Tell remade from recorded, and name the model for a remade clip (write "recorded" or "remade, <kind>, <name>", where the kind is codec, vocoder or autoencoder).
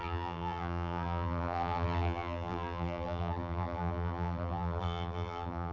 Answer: remade, vocoder, BigVGAN v2